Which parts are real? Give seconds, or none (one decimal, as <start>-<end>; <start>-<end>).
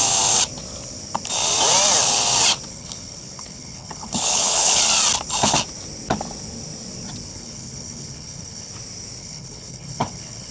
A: 0.0-2.7; 4.8-7.3; 8.7-9.2